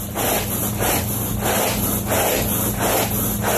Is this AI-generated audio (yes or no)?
no